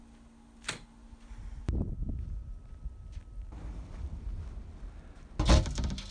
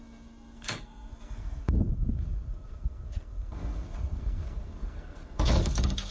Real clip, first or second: first